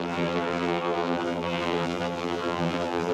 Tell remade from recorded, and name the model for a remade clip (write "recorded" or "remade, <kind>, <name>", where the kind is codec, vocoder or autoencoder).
remade, vocoder, BigVGAN v2